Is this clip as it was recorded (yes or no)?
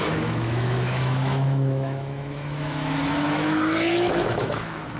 no